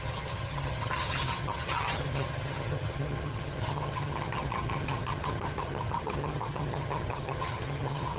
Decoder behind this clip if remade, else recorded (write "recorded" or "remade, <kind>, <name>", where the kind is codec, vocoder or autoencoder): remade, vocoder, HiFi-GAN